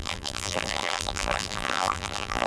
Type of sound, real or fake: fake